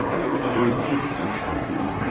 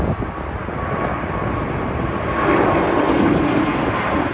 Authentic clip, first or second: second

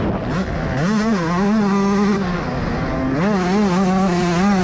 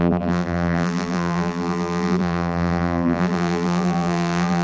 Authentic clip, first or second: first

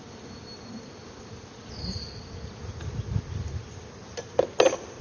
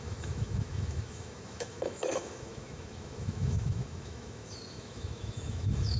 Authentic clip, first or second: first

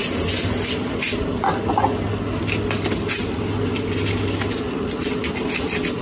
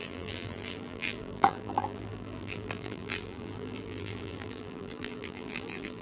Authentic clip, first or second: first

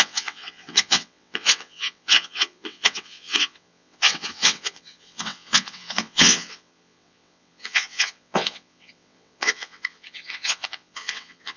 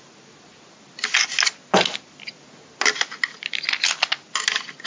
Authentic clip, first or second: second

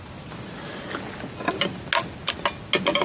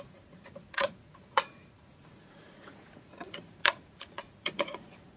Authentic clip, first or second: first